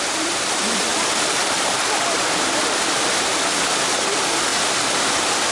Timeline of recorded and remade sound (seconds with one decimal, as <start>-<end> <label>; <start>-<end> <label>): 0.0-4.5 remade; 4.5-5.0 recorded; 5.0-5.5 remade